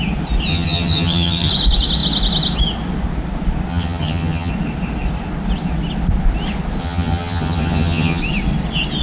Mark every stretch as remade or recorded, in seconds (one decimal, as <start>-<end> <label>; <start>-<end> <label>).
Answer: 0.0-0.5 recorded; 0.5-1.5 remade; 1.5-3.7 recorded; 3.7-4.5 remade; 4.5-6.8 recorded; 6.8-8.2 remade; 8.2-9.0 recorded